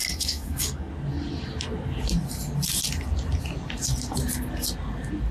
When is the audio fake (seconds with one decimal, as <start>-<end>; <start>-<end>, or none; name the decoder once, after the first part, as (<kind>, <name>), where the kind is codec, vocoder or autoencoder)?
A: 0.0-0.9 (codec, DAC)